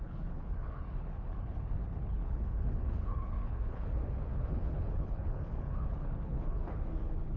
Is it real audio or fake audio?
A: fake